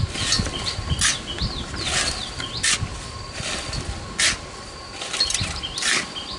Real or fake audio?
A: real